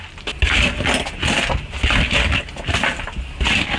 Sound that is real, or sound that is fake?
real